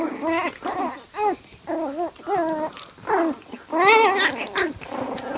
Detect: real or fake real